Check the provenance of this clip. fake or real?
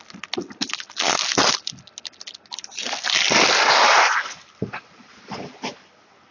real